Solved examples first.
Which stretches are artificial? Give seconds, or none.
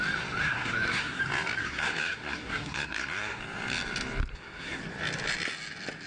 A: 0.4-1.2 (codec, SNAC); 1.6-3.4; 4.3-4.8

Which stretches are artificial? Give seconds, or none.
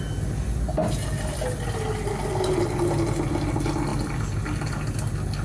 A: none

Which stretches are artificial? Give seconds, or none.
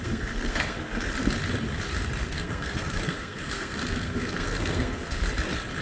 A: 0.0-1.1 (codec, SNAC); 2.2-5.2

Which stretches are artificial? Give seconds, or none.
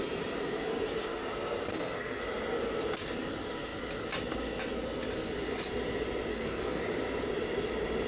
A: 1.7-2.2 (codec, SNAC); 6.3-6.8